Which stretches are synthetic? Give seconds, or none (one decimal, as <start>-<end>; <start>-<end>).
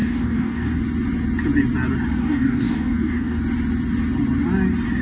0.0-0.8; 2.2-3.4